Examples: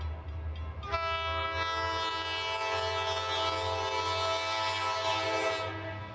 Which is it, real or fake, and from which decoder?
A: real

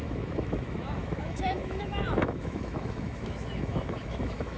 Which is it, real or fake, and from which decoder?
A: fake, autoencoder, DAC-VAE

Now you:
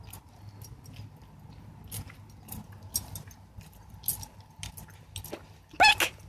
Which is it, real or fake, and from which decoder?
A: real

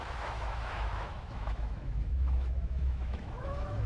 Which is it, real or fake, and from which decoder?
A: fake, autoencoder, DAC-VAE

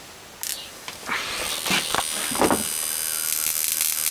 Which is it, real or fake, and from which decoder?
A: real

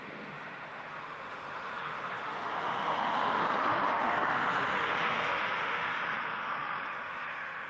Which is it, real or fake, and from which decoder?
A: fake, autoencoder, DAC-VAE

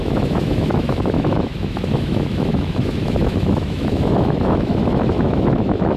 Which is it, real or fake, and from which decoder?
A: fake, autoencoder, DAC-VAE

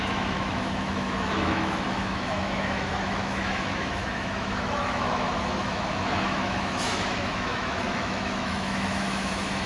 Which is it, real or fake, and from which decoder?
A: fake, autoencoder, DAC-VAE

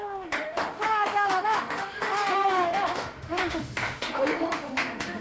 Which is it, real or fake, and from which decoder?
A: fake, autoencoder, DAC-VAE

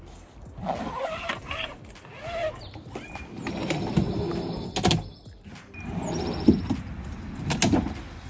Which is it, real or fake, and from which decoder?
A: real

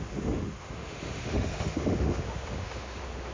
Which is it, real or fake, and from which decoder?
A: fake, autoencoder, DAC-VAE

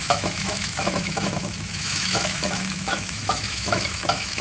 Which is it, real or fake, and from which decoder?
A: fake, autoencoder, DAC-VAE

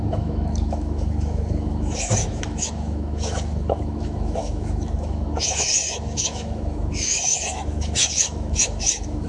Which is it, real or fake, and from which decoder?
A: fake, autoencoder, DAC-VAE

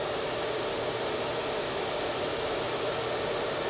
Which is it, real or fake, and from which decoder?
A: real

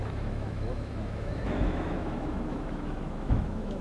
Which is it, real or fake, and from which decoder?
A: fake, autoencoder, DAC-VAE